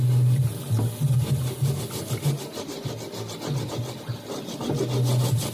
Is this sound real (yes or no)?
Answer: yes